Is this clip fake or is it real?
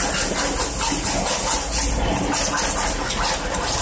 real